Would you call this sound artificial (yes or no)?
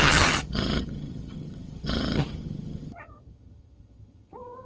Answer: yes